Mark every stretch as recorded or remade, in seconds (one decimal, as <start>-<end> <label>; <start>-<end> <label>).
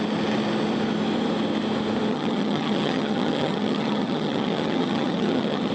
0.0-2.1 recorded; 2.1-5.7 remade